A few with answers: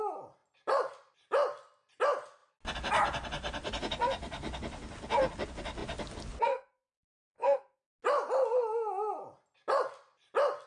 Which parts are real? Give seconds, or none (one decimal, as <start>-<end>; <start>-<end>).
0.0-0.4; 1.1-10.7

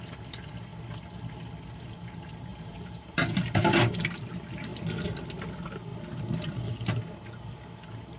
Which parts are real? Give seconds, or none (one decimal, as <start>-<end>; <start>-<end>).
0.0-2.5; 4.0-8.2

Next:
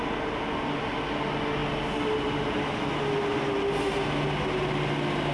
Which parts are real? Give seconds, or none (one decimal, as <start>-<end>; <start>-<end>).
0.0-5.3